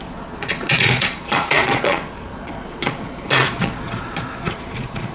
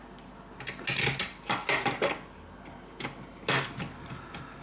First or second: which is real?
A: second